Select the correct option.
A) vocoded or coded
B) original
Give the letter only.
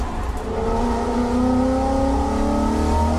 B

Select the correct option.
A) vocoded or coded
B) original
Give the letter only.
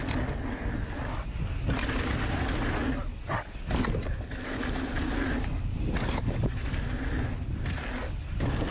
B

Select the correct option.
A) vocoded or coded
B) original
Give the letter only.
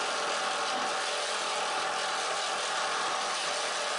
B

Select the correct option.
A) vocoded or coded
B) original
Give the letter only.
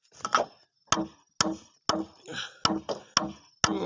B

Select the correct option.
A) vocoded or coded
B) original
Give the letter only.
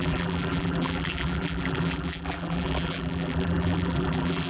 A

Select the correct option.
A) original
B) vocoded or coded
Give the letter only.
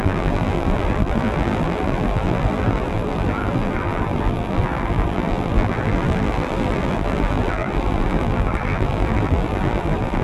B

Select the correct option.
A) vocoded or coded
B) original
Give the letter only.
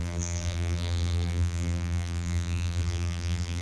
A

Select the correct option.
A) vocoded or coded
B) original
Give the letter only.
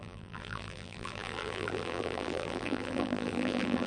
A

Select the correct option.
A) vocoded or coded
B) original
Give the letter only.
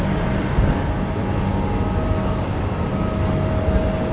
B